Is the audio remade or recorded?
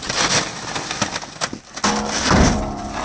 recorded